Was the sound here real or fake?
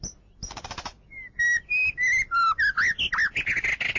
real